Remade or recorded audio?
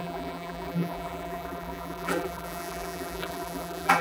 remade